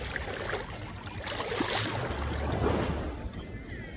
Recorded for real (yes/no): yes